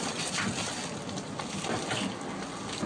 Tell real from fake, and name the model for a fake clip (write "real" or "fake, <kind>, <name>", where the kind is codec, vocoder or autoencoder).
real